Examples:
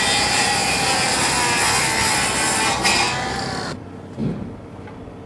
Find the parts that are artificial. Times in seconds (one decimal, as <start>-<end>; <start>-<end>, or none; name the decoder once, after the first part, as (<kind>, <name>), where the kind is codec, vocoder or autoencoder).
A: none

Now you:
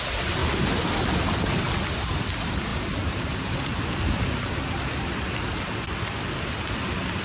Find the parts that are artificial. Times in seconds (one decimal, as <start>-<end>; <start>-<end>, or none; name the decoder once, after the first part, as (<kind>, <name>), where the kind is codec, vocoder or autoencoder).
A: 2.7-4.4 (vocoder, BigVGAN v2)

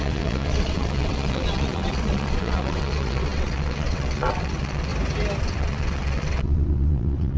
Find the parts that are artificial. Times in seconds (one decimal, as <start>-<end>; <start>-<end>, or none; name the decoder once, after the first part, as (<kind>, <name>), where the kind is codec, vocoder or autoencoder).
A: 0.0-4.9 (vocoder, WaveNeXt); 5.4-7.4

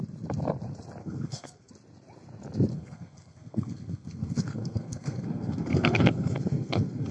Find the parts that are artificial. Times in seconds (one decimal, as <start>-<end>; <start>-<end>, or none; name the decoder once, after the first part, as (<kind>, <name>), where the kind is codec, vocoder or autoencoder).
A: 1.0-1.7 (codec, SNAC); 2.7-7.1